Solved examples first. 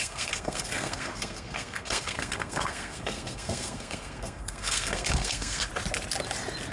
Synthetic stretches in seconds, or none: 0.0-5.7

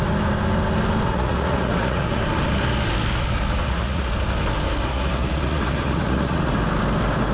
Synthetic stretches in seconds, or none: 1.1-2.2; 3.6-4.1; 4.9-6.5

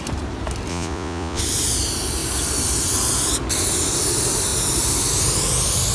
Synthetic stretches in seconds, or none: 0.7-1.4

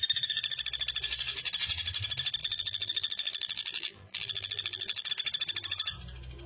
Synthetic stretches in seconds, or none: 2.4-5.1

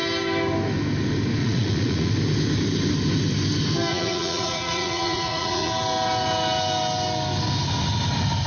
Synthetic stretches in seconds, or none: 1.4-2.1; 3.9-5.7

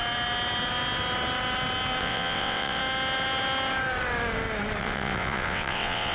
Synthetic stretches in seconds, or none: 2.0-2.8; 4.8-6.1